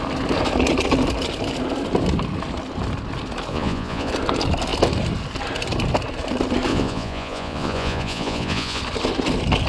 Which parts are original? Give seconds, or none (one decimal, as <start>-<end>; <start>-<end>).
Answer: 0.0-3.5; 4.1-6.7; 8.8-9.7